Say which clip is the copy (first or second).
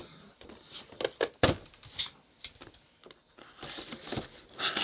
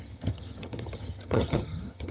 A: second